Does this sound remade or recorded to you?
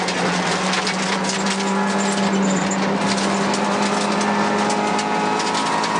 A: recorded